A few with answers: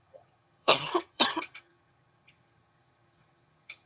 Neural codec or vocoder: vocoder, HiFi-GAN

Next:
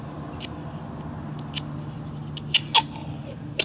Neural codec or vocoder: none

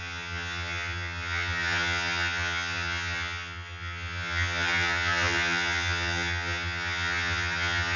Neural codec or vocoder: vocoder, HiFi-GAN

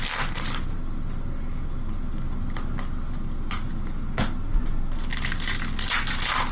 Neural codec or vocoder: none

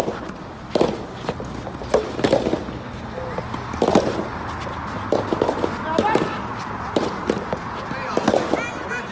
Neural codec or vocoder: none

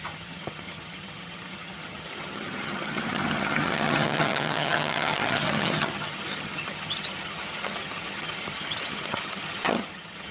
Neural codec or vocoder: vocoder, HiFi-GAN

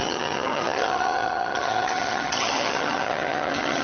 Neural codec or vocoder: vocoder, HiFi-GAN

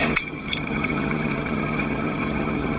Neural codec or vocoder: vocoder, HiFi-GAN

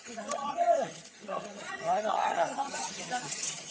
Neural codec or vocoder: vocoder, HiFi-GAN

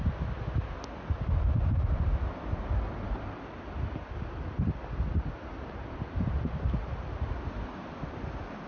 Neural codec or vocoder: none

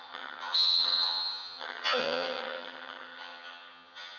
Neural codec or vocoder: vocoder, HiFi-GAN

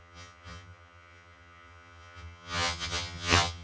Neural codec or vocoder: vocoder, HiFi-GAN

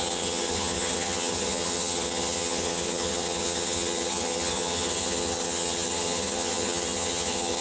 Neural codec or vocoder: vocoder, HiFi-GAN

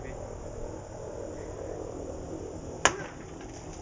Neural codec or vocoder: none